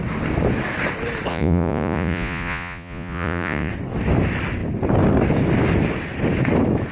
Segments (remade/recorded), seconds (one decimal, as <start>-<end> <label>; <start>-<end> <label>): 0.0-1.3 recorded; 1.3-3.7 remade; 3.7-6.9 recorded